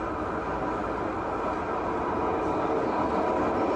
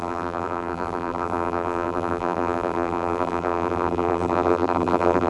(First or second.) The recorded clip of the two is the first